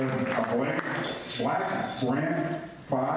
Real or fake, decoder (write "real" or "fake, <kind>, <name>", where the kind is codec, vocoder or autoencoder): real